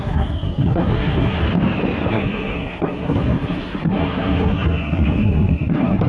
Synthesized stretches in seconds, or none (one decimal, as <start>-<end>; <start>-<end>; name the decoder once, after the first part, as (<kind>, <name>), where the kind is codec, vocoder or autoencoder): 0.0-1.4 (codec, SNAC); 2.1-6.1